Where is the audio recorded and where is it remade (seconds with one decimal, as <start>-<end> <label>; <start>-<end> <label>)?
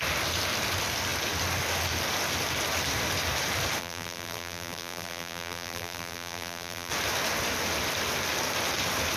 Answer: 0.0-3.8 recorded; 3.8-6.9 remade; 6.9-9.2 recorded